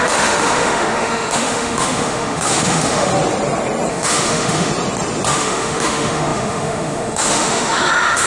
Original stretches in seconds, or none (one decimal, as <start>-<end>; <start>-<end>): 3.1-3.9; 4.7-5.3